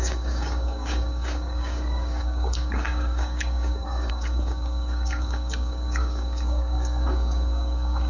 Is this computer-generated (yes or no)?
yes